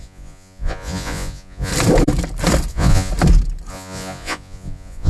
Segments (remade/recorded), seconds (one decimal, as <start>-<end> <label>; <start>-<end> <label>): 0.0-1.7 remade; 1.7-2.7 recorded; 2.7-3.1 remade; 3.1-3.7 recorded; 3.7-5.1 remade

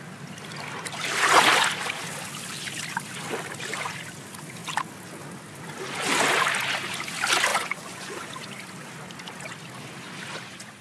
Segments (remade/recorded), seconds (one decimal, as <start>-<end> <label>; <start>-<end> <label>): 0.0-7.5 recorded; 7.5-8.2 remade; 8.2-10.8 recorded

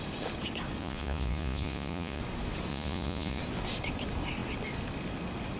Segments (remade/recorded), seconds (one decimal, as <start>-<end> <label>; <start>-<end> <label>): 0.0-0.8 recorded; 0.8-2.2 remade; 2.2-2.7 recorded; 2.7-3.4 remade; 3.4-5.6 recorded